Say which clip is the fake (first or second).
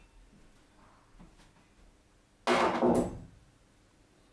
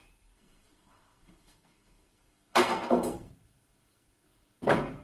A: second